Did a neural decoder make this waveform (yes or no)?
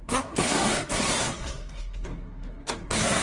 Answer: yes